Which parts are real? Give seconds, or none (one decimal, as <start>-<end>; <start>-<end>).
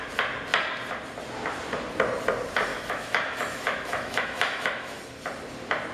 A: 0.0-2.7; 5.0-5.9